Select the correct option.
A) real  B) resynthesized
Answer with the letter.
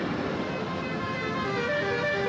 A